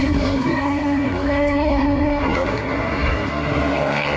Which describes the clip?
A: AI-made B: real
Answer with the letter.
A